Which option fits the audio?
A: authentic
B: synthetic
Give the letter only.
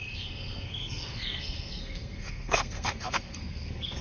B